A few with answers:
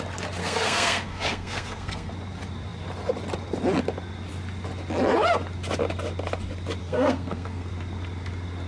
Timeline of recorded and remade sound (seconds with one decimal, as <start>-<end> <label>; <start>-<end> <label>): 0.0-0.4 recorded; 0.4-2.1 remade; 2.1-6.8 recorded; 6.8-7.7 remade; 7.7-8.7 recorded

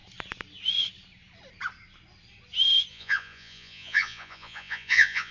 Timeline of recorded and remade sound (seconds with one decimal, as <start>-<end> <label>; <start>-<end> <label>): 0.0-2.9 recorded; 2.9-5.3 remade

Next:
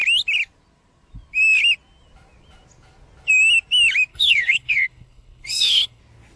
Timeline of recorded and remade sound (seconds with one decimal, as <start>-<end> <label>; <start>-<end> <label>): 0.0-4.1 recorded; 4.1-6.0 remade; 6.0-6.4 recorded

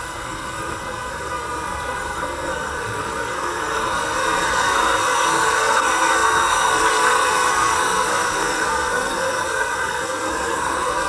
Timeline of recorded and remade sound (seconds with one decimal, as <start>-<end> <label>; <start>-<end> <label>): 0.0-11.1 remade

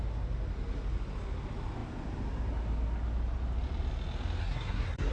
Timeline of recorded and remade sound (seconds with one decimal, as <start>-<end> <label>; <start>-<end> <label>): 0.0-4.4 recorded; 4.4-5.1 remade

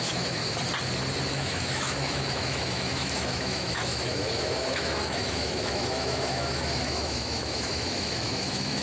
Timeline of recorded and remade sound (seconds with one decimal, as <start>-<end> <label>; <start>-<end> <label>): 0.0-0.4 remade; 0.4-1.3 recorded; 1.3-8.8 remade

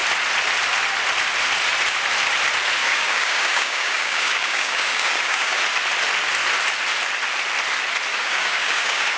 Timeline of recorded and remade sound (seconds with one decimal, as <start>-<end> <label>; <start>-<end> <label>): 0.0-2.8 recorded; 2.8-5.6 remade; 5.6-8.1 recorded; 8.1-9.2 remade